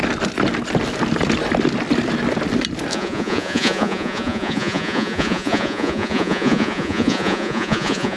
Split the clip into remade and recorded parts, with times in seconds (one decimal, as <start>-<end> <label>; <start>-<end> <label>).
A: 0.0-2.9 recorded; 2.9-8.2 remade